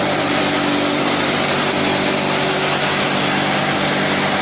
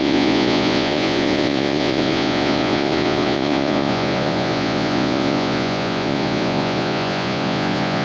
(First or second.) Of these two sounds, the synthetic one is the second